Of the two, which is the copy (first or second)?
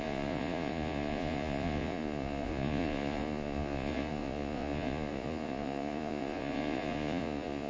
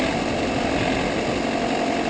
first